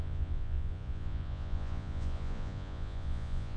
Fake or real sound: fake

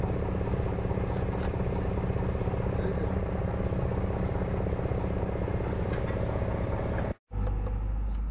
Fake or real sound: real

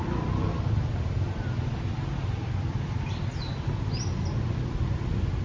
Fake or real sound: real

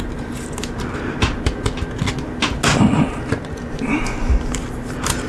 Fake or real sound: real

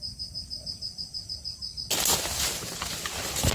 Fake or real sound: real